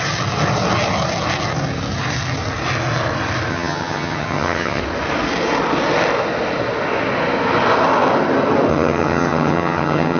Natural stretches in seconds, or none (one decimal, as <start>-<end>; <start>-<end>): 0.0-3.5; 4.8-8.7

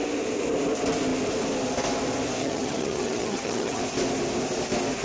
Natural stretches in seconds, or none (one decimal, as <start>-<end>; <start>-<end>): 0.0-2.4; 3.8-5.0

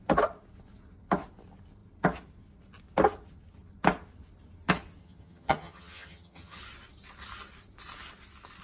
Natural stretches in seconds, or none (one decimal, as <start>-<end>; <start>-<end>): 0.0-5.0; 6.6-8.6

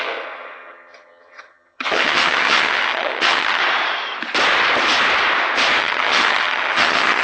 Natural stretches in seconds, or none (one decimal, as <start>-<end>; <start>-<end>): 3.6-5.8

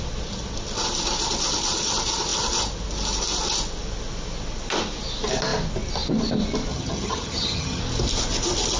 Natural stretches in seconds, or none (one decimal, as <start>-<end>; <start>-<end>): 0.0-6.7; 7.8-8.8

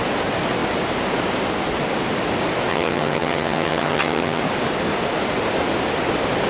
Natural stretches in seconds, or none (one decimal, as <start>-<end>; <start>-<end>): 0.0-2.7; 4.4-6.5